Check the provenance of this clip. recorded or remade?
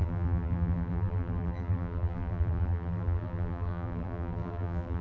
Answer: remade